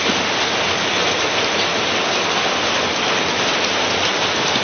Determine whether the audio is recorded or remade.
recorded